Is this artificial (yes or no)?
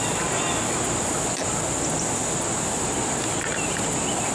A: no